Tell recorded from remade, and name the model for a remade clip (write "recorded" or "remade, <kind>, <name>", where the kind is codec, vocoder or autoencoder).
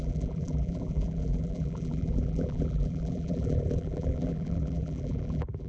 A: remade, vocoder, BigVGAN v2